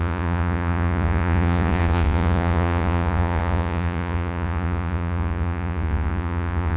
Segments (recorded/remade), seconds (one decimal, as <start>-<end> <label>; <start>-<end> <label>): 0.0-6.8 remade